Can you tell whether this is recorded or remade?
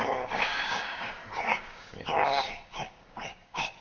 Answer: remade